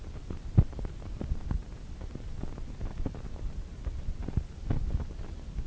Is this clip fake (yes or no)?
no